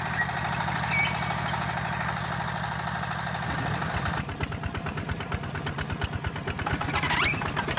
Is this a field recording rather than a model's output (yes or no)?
yes